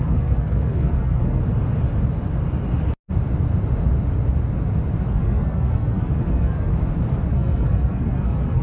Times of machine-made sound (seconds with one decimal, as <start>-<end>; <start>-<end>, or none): 0.0-1.4; 5.0-6.7; 7.3-8.6